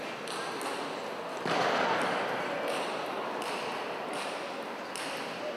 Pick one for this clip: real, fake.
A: real